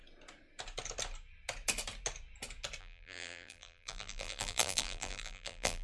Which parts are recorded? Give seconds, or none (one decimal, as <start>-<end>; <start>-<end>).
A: 0.0-2.8

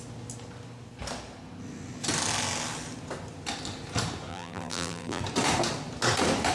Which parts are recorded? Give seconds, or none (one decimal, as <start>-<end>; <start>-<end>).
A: 0.0-4.3; 5.2-6.5

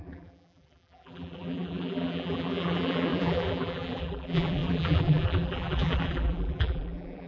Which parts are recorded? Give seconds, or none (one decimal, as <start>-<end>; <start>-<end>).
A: none